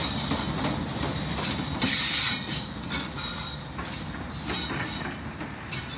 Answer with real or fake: real